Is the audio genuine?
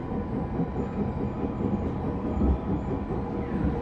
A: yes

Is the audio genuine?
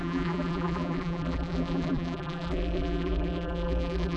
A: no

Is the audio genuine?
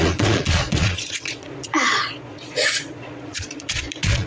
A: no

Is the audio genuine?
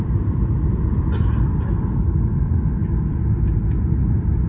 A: yes